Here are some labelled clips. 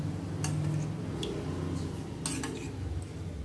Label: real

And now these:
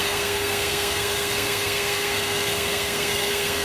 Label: fake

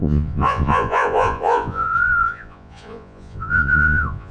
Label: fake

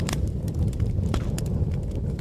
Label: fake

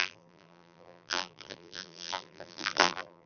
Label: fake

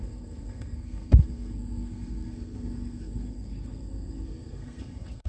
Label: fake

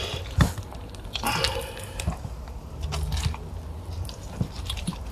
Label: real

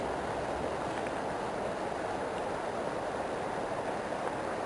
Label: real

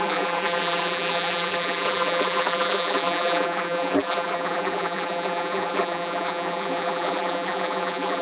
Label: fake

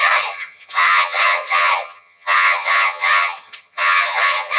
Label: fake